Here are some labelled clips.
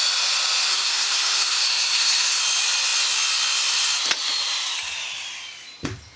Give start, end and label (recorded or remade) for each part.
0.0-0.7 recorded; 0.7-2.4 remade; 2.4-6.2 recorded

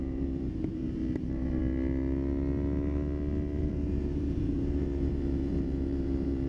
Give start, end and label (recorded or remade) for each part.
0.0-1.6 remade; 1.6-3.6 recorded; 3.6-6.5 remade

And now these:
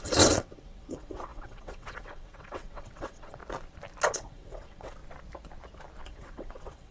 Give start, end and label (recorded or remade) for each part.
0.0-3.4 remade; 3.4-4.1 recorded; 4.1-5.0 remade; 5.0-6.1 recorded; 6.1-6.9 remade

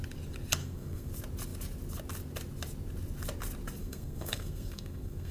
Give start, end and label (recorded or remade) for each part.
0.0-0.6 recorded; 0.6-1.1 remade; 1.1-3.8 recorded; 3.8-5.3 remade

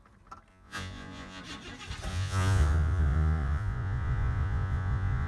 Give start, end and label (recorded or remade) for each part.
0.0-0.5 recorded; 0.5-1.4 remade; 1.4-2.1 recorded; 2.1-5.3 remade